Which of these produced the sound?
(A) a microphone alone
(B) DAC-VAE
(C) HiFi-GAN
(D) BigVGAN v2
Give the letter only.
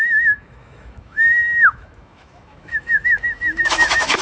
B